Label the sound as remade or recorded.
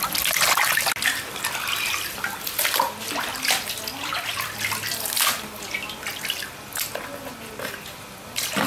recorded